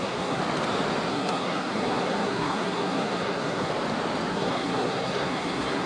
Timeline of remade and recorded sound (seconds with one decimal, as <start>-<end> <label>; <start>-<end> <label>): 0.0-0.4 remade; 0.4-1.1 recorded; 1.1-3.7 remade; 3.7-4.3 recorded; 4.3-5.9 remade